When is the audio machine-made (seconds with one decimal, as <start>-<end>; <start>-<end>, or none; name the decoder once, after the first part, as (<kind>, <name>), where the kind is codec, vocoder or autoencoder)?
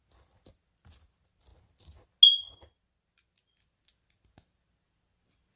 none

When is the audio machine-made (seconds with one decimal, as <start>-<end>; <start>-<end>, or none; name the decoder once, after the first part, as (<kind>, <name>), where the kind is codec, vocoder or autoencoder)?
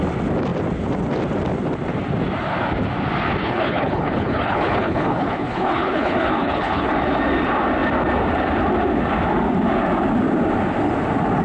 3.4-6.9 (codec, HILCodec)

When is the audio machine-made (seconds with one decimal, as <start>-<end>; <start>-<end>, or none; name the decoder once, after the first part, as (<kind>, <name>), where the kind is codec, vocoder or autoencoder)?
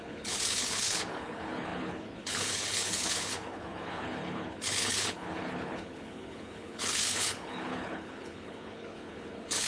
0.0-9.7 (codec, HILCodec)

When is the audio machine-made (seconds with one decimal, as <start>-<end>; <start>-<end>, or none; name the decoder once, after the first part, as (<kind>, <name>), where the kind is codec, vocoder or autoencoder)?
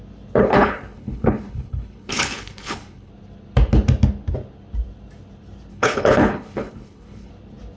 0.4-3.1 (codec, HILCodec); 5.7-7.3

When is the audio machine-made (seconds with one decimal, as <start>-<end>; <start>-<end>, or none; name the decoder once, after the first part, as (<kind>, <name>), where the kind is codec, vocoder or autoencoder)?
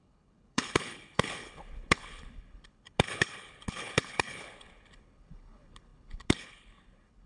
0.0-7.3 (codec, HILCodec)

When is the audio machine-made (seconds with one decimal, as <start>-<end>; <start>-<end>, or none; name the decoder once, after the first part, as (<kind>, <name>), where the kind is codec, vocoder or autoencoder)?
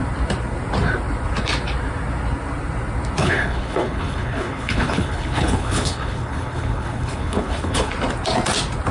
3.2-7.9 (codec, HILCodec)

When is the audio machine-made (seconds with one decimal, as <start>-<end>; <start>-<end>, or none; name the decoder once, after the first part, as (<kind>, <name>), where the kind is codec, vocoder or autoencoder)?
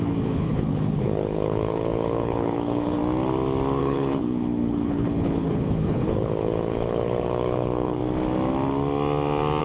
0.0-3.0 (codec, HILCodec); 3.8-8.0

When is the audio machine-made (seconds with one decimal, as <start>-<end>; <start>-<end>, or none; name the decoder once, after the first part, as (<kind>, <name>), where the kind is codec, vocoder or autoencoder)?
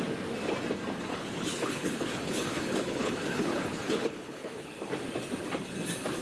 1.1-4.8 (codec, HILCodec)